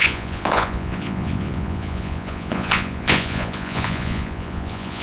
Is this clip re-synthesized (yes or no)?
yes